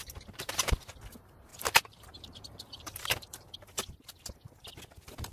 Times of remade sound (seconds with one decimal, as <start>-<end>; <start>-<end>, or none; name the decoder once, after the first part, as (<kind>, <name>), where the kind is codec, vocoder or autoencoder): 0.0-0.7 (vocoder, BigVGAN v2); 1.5-3.9